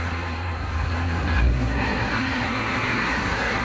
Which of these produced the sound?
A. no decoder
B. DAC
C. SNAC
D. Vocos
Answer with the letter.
C